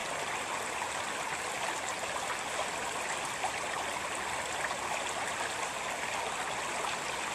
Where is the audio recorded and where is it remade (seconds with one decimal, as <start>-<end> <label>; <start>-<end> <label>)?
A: 0.0-7.3 recorded